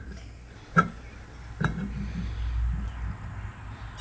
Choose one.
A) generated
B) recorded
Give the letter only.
B